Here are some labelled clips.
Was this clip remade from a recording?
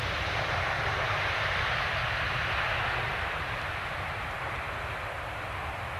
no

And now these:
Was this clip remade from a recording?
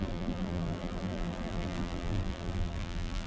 yes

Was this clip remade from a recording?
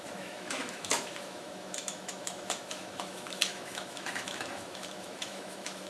yes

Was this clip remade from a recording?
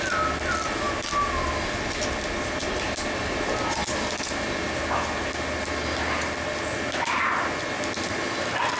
no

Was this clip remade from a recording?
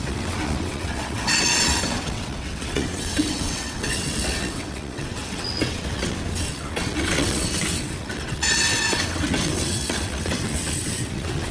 yes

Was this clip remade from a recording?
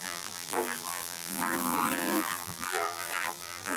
yes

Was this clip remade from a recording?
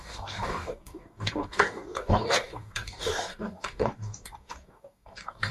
yes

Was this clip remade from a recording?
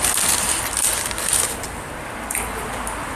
no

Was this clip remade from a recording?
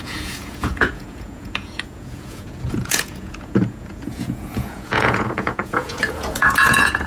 yes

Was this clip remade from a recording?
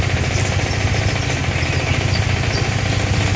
no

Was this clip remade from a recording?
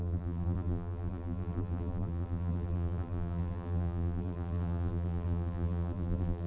yes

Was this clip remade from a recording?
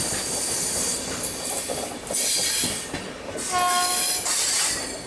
no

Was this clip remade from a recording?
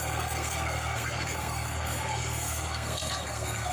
yes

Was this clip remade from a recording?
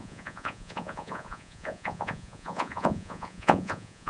yes